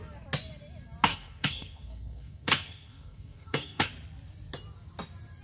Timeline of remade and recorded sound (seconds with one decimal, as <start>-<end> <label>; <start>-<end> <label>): 0.0-1.1 recorded; 1.1-3.9 remade; 3.9-5.4 recorded